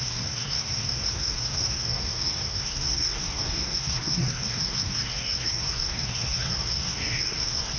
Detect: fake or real fake